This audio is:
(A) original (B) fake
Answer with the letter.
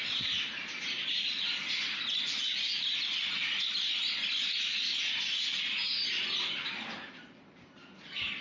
A